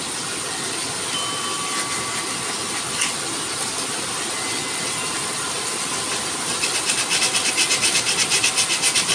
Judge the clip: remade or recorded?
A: recorded